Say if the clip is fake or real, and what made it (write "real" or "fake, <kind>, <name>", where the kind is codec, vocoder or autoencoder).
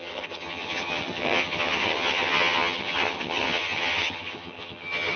fake, vocoder, HiFi-GAN